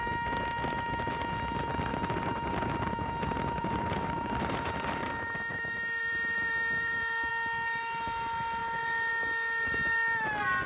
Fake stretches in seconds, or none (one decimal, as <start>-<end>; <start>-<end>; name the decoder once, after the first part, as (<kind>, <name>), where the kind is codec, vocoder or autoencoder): 1.9-5.1 (vocoder, BigVGAN v2); 5.5-7.3